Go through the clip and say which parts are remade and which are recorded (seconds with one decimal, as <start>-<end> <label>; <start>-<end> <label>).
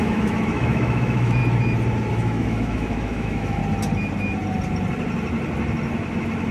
0.0-1.4 remade; 1.4-2.1 recorded; 2.1-3.6 remade; 3.6-6.5 recorded